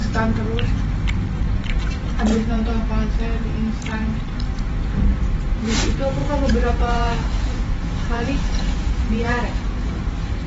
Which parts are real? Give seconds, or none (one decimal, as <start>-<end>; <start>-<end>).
0.0-2.3; 2.8-6.2; 9.8-10.5